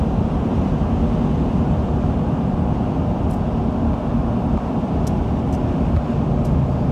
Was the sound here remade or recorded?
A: recorded